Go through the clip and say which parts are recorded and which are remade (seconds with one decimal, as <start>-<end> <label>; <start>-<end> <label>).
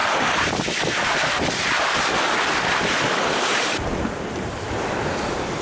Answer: 0.0-5.6 recorded